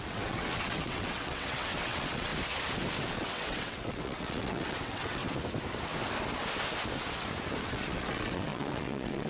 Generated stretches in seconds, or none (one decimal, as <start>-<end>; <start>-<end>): 0.0-2.3; 3.1-5.2; 7.6-9.3